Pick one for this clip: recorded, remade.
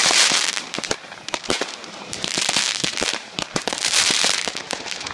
remade